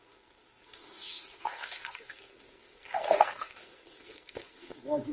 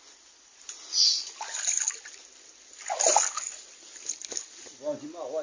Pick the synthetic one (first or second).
first